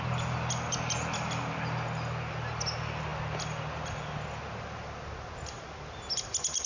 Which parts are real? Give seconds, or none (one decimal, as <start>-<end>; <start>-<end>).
0.0-6.7